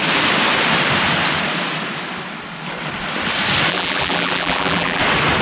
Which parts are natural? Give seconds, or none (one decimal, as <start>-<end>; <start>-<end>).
0.0-3.7; 5.0-5.4